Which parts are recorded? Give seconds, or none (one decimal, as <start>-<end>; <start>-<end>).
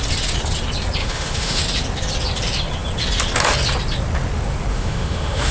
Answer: 0.0-1.0; 1.6-4.7